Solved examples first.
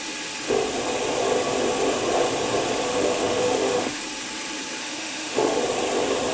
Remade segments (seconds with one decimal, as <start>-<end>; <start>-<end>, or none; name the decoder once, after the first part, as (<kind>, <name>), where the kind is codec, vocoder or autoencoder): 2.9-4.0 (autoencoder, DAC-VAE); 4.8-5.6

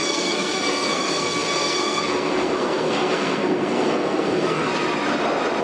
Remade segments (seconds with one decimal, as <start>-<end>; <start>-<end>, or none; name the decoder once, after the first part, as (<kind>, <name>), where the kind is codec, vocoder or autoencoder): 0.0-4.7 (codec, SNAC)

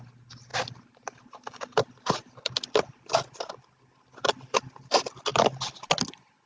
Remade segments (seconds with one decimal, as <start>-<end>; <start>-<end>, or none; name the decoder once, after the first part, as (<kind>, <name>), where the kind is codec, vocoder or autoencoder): none

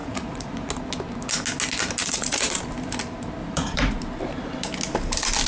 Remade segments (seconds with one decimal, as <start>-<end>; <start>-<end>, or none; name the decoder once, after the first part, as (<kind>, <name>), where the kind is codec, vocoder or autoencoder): 0.0-0.7 (vocoder, Vocos); 2.0-2.6; 3.4-4.0

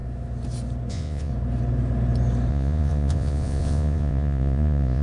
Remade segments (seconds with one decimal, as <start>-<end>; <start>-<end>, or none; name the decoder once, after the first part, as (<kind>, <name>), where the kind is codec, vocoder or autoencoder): 0.9-1.3 (vocoder, Vocos); 2.5-5.0

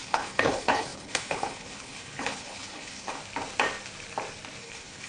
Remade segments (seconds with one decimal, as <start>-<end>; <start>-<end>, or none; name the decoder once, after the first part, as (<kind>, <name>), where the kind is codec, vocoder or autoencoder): 0.0-3.2 (codec, HILCodec); 4.6-5.1

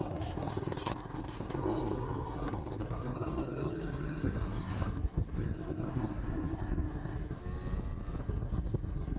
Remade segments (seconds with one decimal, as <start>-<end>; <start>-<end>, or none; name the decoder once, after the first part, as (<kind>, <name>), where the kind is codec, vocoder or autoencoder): 0.0-7.4 (codec, SNAC); 8.2-9.2